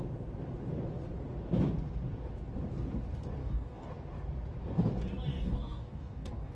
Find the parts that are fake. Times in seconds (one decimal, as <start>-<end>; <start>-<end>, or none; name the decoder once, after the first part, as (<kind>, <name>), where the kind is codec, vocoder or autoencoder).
3.4-3.9 (codec, DAC); 5.3-6.5